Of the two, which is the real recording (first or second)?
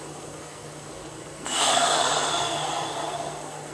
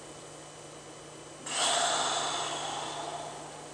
second